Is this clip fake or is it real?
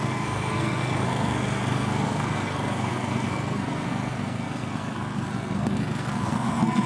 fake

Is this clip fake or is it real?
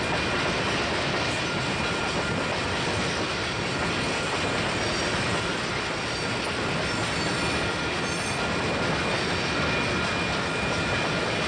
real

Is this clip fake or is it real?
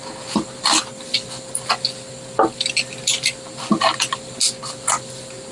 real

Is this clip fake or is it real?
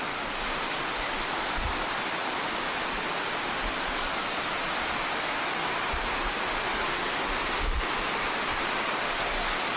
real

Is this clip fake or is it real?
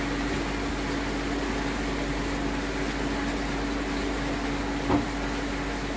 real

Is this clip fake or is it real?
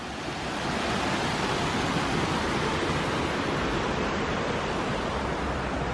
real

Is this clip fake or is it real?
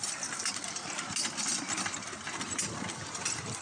real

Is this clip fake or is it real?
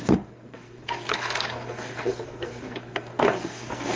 fake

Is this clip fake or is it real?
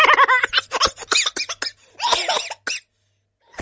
real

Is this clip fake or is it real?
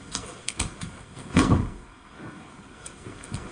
fake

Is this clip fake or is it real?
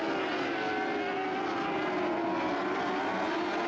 real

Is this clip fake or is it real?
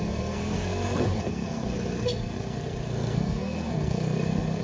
fake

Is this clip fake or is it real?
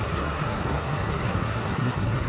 fake